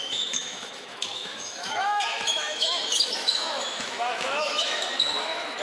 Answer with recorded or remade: remade